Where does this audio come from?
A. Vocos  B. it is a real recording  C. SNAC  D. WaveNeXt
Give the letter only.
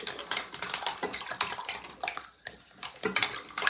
B